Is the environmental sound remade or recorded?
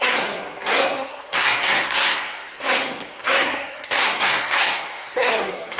remade